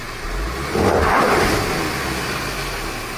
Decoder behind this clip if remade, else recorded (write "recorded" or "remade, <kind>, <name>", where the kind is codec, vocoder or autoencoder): recorded